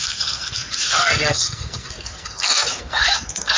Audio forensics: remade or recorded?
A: remade